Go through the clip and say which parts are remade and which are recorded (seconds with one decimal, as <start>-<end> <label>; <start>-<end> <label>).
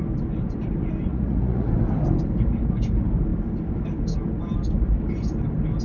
0.0-1.1 recorded; 1.1-1.7 remade; 1.7-5.8 recorded